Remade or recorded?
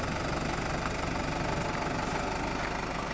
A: recorded